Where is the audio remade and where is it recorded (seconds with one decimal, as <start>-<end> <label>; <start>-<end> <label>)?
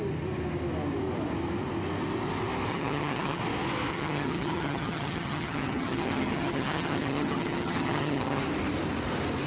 0.0-2.7 recorded; 2.7-3.4 remade; 3.4-3.9 recorded; 3.9-8.4 remade; 8.4-9.5 recorded